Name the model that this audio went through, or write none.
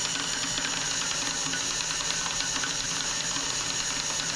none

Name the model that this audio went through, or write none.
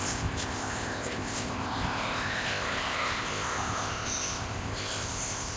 codec, ZipCodec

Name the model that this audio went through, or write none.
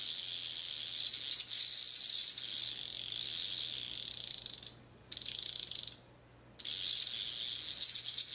none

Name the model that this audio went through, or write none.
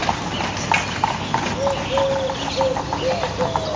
none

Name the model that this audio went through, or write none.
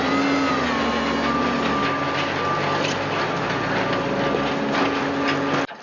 none